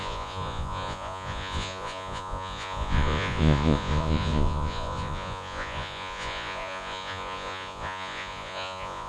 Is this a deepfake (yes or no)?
yes